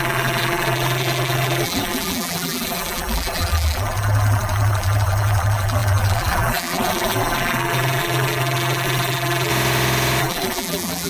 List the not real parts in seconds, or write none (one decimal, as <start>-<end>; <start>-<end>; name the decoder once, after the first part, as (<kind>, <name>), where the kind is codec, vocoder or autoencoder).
0.0-9.5 (vocoder, BigVGAN v2); 10.2-11.1